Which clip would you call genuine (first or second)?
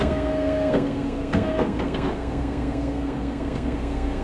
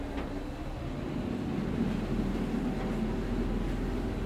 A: second